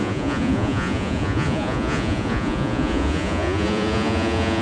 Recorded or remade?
remade